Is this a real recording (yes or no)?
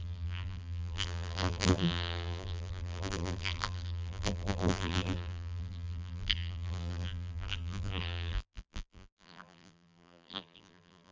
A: no